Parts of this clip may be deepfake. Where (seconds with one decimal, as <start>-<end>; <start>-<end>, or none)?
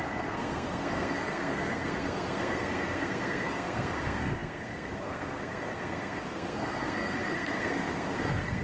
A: 0.0-8.6